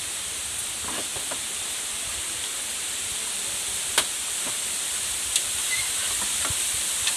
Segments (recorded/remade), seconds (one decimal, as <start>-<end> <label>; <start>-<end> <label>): 0.0-2.7 recorded; 2.7-5.5 remade; 5.5-7.2 recorded